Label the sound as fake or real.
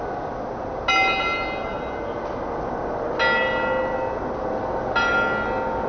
real